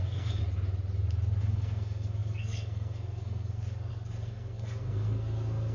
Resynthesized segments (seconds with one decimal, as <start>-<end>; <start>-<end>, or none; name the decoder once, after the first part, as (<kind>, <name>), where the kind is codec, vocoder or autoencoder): 0.0-0.4 (codec, SNAC); 1.4-5.7